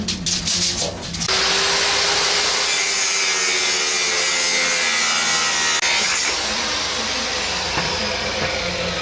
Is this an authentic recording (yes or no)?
yes